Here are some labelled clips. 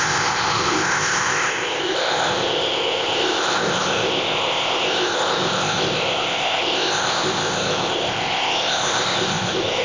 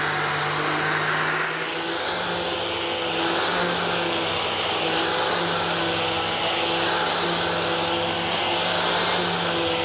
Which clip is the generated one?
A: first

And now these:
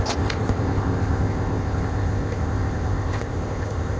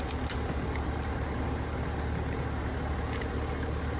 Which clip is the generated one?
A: first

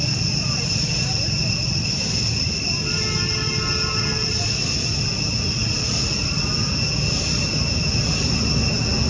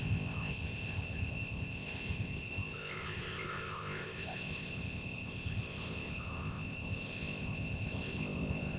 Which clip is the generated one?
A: second